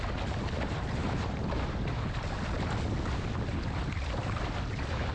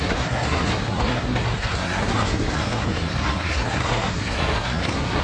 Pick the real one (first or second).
first